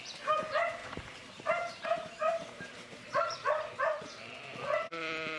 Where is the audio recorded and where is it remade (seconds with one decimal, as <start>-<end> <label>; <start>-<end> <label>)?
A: 0.0-0.8 recorded; 0.8-4.0 remade; 4.0-5.4 recorded